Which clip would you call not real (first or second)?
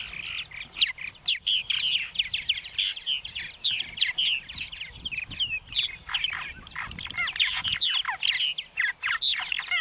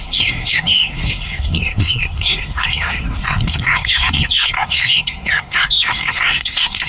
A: second